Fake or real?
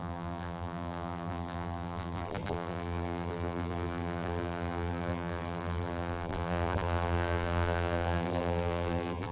fake